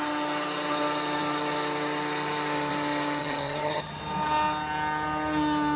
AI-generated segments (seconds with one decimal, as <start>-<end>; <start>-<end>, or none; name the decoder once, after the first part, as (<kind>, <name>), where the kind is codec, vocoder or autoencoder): 3.2-4.0 (vocoder, HiFi-GAN)